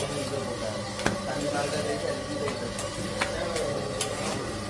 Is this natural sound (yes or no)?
yes